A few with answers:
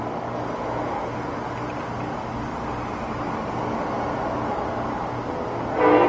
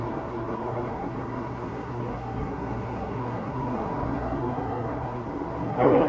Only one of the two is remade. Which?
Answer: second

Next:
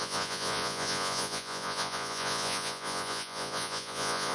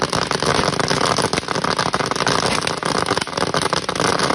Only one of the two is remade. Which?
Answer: first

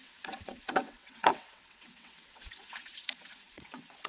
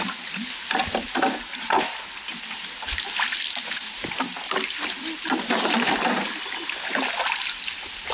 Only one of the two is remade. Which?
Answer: first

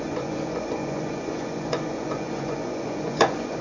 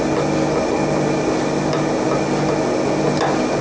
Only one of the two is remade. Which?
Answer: first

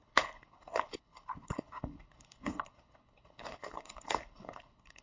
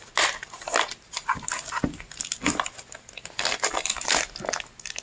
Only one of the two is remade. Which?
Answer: first